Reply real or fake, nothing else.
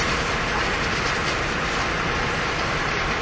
real